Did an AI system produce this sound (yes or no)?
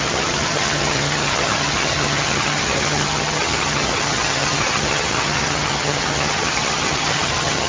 yes